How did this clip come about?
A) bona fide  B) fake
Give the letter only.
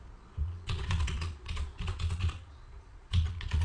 B